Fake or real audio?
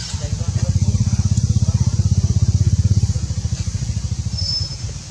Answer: fake